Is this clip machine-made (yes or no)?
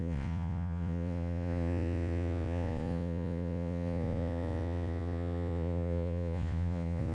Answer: yes